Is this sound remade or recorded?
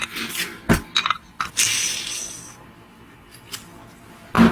recorded